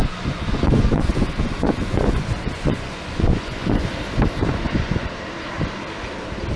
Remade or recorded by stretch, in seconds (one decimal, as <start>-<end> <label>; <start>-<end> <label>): 0.0-4.0 remade; 4.0-4.4 recorded; 4.4-5.1 remade; 5.1-6.6 recorded